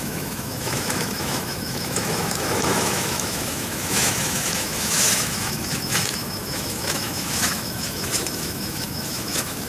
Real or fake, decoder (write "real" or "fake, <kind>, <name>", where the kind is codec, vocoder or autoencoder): fake, autoencoder, DAC-VAE